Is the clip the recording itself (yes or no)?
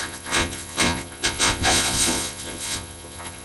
no